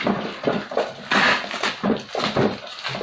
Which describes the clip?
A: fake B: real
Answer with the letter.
B